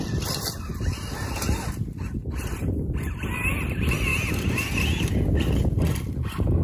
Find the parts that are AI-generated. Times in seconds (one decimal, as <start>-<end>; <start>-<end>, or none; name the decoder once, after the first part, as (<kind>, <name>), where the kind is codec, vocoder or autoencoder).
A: none